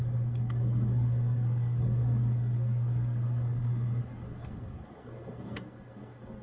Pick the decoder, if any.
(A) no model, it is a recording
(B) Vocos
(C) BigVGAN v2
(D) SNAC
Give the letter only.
D